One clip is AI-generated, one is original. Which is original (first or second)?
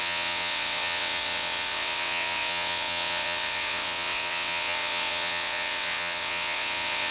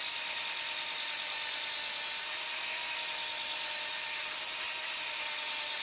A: second